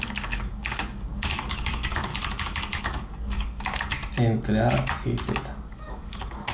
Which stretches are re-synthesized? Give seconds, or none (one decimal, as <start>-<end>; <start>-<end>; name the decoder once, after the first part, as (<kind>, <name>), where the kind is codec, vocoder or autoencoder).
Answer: 0.0-2.1 (codec, DAC); 2.8-4.0; 5.7-6.5